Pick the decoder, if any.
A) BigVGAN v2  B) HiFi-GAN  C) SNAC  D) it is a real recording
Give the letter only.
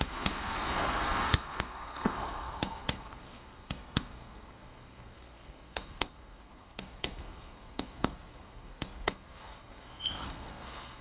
C